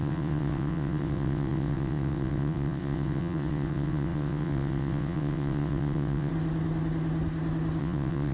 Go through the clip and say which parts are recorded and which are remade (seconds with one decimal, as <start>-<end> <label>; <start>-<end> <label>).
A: 0.0-6.3 remade; 6.3-7.8 recorded; 7.8-8.3 remade